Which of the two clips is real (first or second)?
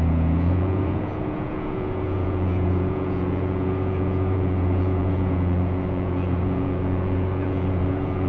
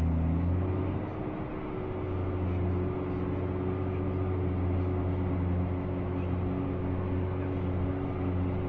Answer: second